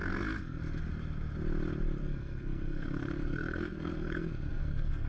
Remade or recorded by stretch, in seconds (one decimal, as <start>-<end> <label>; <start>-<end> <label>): 0.0-0.6 remade; 0.6-2.0 recorded; 2.0-5.1 remade